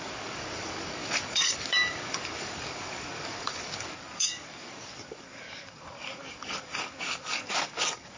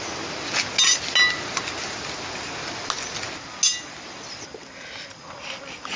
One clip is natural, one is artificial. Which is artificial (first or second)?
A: first